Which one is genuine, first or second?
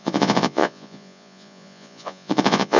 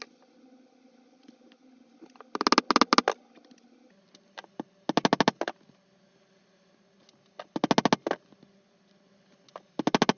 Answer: second